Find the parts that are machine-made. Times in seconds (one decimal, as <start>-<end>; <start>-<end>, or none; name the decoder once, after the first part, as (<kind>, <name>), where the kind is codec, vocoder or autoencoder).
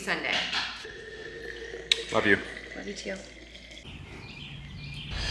0.8-1.4 (autoencoder, DAC-VAE)